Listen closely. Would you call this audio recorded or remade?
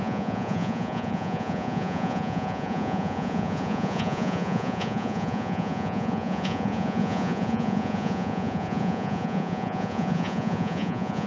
remade